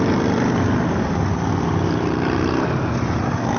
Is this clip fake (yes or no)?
no